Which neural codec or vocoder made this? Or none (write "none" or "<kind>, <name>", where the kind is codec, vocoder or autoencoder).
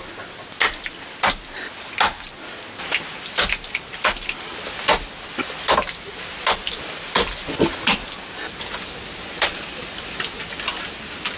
none